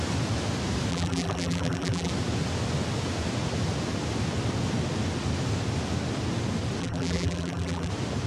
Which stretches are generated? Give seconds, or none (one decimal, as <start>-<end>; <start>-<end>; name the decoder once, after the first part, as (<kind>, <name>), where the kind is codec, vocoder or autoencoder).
0.9-2.1 (vocoder, BigVGAN v2); 6.8-7.9